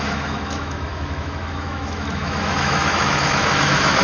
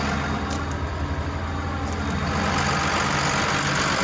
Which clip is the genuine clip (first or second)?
second